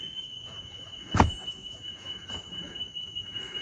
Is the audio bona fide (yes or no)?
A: no